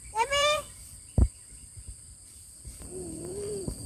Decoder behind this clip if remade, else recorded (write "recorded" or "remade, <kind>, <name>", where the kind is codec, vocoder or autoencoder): remade, vocoder, BigVGAN v2